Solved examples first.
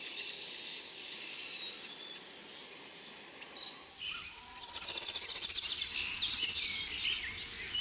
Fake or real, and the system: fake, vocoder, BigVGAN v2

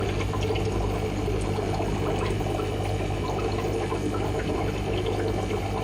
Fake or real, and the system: real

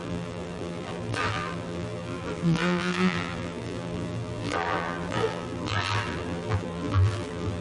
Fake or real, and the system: fake, vocoder, BigVGAN v2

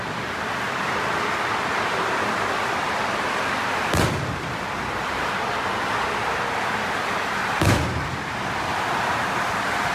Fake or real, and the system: fake, vocoder, BigVGAN v2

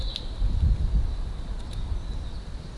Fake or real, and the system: real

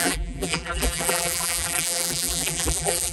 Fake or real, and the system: fake, vocoder, BigVGAN v2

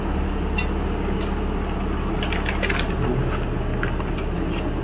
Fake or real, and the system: real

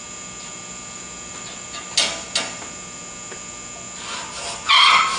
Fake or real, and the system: real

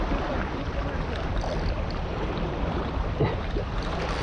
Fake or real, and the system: fake, vocoder, BigVGAN v2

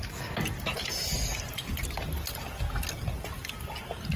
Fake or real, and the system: real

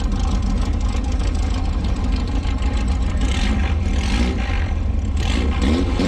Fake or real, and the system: fake, vocoder, BigVGAN v2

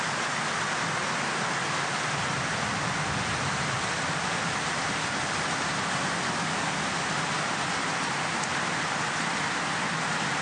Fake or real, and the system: real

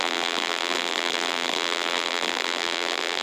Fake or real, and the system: fake, vocoder, BigVGAN v2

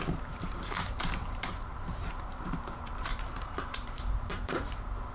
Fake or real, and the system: fake, vocoder, BigVGAN v2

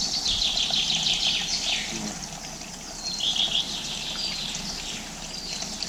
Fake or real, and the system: real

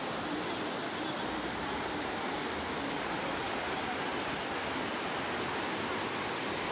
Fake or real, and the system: real